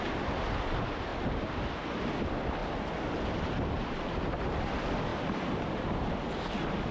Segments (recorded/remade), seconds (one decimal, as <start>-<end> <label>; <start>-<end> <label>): 0.0-5.1 recorded; 5.1-6.3 remade; 6.3-6.9 recorded